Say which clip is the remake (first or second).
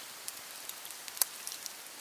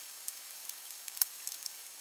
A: second